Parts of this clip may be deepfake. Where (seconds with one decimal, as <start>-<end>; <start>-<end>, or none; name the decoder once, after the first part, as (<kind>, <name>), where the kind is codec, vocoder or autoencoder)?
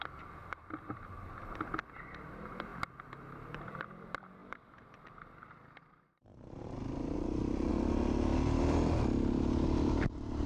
0.0-2.7 (vocoder, BigVGAN v2); 3.6-10.5